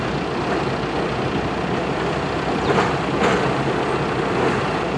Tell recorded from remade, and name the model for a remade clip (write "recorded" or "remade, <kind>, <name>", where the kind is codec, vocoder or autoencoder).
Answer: recorded